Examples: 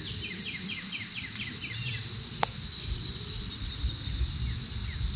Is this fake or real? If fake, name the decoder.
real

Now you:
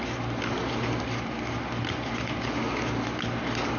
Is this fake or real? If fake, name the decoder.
real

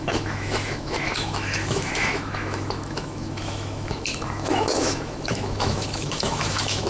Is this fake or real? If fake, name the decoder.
fake, autoencoder, DAC-VAE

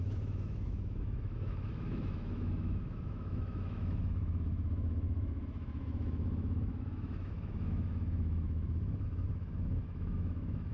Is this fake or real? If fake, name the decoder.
fake, autoencoder, DAC-VAE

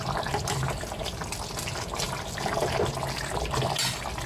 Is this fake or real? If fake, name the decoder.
real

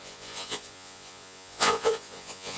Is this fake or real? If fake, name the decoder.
fake, vocoder, Vocos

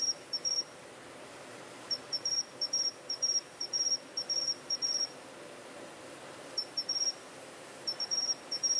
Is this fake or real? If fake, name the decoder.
fake, vocoder, BigVGAN v2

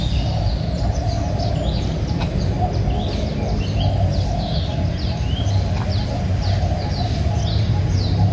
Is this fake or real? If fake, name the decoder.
real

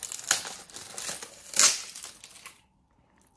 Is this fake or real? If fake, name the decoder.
real